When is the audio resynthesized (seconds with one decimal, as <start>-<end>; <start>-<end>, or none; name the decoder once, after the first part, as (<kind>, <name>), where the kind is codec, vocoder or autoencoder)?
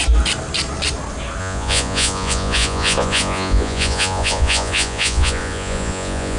1.4-6.4 (vocoder, Vocos)